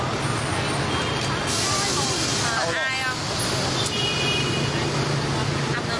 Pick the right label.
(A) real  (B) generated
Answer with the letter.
A